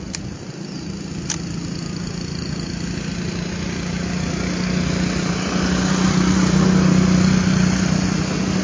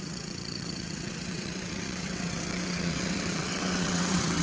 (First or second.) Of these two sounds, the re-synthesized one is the second